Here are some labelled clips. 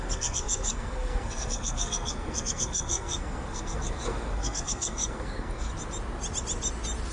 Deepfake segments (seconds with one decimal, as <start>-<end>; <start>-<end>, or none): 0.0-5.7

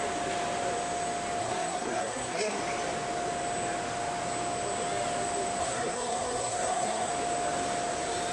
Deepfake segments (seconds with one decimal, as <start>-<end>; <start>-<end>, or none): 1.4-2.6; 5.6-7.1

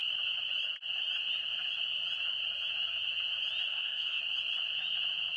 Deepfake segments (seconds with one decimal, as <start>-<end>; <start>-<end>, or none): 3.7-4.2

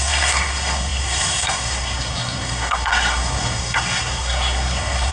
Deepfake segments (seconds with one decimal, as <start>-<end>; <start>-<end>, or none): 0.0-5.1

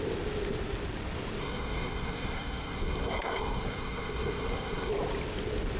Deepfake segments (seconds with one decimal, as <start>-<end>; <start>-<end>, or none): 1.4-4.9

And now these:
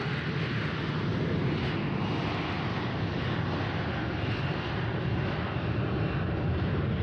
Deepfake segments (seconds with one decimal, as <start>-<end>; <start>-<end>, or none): none

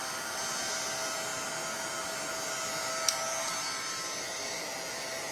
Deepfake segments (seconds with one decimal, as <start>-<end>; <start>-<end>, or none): none

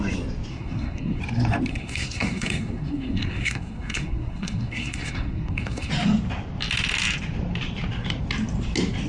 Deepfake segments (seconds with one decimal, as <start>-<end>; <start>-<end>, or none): 0.5-1.2; 1.7-5.9